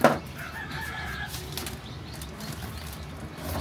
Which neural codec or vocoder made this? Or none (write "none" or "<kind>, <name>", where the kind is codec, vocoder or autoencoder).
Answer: none